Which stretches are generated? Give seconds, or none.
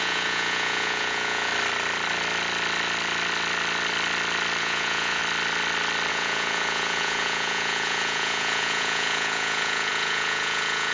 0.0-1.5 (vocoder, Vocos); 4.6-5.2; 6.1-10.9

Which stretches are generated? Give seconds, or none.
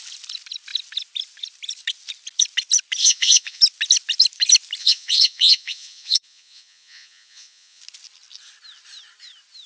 3.0-3.6 (vocoder, Vocos); 4.8-7.8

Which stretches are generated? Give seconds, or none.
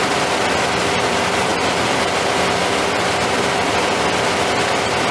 none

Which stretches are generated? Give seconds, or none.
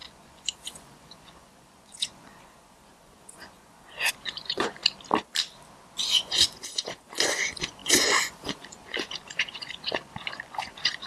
0.0-4.8 (vocoder, Vocos); 6.0-11.1